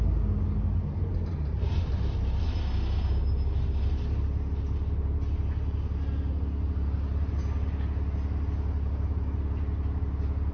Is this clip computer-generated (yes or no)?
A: no